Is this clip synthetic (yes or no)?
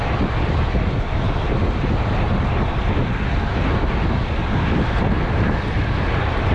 no